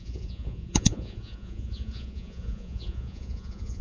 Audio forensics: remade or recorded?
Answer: remade